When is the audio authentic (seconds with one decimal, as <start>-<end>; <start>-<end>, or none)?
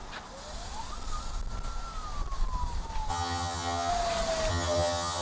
0.0-3.1; 3.9-4.5